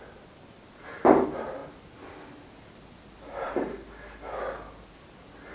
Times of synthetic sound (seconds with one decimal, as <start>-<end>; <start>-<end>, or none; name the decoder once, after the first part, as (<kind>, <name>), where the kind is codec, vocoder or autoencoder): none

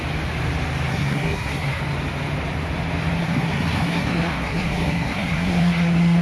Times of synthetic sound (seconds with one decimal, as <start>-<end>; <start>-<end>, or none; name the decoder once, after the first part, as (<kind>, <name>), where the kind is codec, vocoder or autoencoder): 0.9-1.8 (codec, SNAC); 3.2-6.2

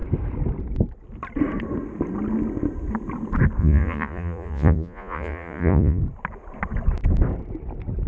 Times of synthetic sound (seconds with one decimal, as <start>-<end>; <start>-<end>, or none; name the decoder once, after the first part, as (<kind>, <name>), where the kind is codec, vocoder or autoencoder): 3.6-6.0 (vocoder, Vocos)

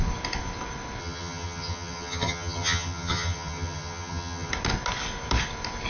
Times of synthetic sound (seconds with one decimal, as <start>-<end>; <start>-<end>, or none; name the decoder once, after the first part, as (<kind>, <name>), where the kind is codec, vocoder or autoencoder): 1.0-4.5 (vocoder, HiFi-GAN)

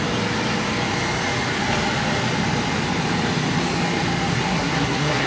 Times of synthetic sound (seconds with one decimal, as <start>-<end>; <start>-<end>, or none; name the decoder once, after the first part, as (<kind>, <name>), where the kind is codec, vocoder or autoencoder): 4.3-5.3 (codec, SNAC)

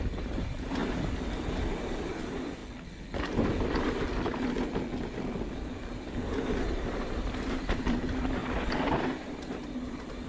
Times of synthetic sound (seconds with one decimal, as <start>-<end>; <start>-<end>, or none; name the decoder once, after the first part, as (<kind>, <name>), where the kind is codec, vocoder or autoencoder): 0.0-0.8 (vocoder, BigVGAN v2); 2.2-2.6; 6.6-8.4; 8.9-10.3

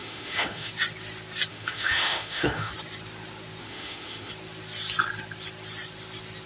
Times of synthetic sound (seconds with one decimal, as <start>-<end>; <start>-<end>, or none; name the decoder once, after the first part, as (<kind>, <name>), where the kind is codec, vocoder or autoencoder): 0.0-0.7 (autoencoder, DAC-VAE); 1.5-2.7; 3.6-4.3

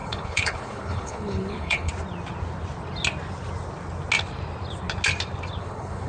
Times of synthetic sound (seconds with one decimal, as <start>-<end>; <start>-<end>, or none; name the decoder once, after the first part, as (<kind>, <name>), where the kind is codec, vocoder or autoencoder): 0.0-1.9 (codec, HILCodec); 5.6-6.1